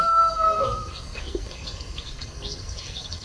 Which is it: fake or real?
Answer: fake